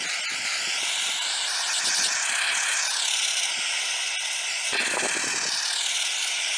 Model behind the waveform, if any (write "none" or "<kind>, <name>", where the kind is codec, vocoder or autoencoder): none